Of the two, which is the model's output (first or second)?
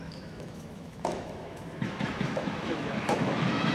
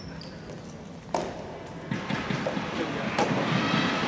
first